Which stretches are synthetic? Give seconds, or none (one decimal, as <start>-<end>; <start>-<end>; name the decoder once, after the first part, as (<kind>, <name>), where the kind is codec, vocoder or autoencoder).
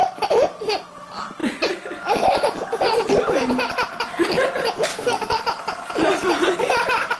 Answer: 4.9-5.4 (codec, SNAC)